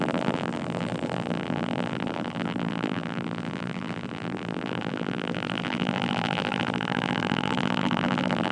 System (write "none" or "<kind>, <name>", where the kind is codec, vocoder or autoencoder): vocoder, BigVGAN v2